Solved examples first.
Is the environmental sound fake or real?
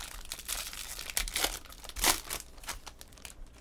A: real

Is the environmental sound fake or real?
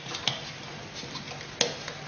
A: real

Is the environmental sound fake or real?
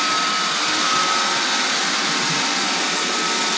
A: real